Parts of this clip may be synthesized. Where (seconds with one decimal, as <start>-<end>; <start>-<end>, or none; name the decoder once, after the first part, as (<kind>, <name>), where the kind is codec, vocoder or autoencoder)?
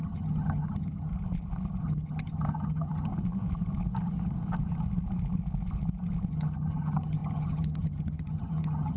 0.0-1.1 (vocoder, HiFi-GAN); 1.8-3.1; 6.3-9.0